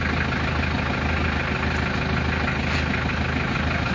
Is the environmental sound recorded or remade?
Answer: recorded